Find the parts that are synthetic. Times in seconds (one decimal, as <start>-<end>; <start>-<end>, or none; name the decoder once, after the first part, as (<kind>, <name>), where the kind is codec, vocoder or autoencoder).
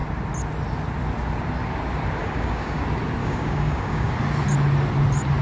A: 2.2-2.8 (codec, DAC); 3.2-4.1